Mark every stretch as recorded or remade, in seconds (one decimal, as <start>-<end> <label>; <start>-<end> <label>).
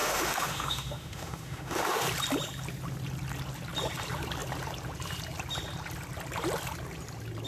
0.0-2.0 remade; 2.0-7.5 recorded